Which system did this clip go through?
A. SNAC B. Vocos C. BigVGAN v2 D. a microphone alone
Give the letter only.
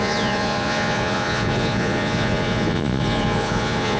B